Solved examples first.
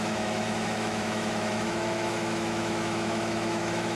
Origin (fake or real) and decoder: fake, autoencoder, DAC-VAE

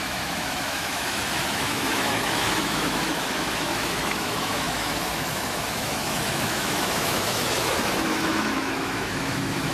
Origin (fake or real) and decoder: fake, autoencoder, DAC-VAE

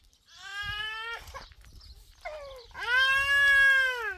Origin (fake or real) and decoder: real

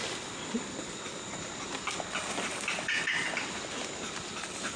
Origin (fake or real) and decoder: real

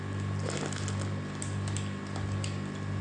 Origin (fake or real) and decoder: real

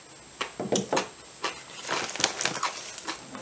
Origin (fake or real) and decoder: real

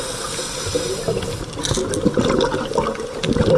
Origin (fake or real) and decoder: real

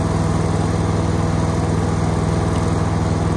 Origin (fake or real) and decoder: real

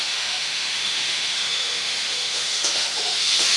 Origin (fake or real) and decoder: fake, autoencoder, DAC-VAE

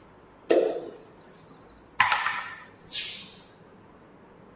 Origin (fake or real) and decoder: real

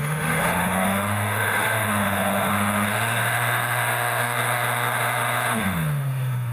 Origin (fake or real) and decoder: fake, autoencoder, DAC-VAE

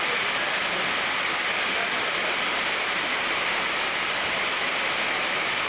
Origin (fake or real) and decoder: real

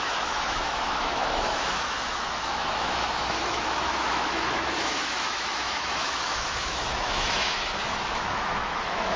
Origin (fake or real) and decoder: fake, autoencoder, DAC-VAE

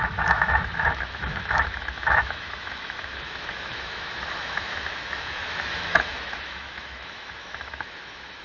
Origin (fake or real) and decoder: fake, autoencoder, DAC-VAE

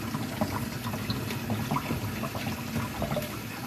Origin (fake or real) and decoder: real